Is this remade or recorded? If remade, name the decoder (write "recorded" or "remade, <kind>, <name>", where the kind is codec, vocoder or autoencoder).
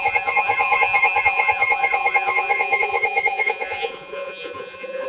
remade, vocoder, Vocos